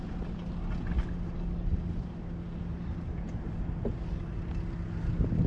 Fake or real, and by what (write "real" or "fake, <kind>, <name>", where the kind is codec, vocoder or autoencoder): real